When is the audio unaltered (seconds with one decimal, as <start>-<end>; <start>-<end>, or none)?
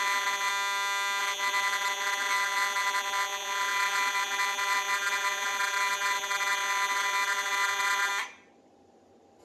0.5-1.2; 8.1-9.4